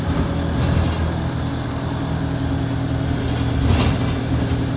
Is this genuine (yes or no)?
yes